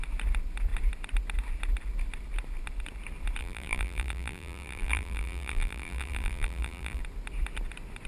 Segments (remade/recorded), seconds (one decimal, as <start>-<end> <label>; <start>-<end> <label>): 0.0-3.4 recorded; 3.4-7.0 remade; 7.0-8.1 recorded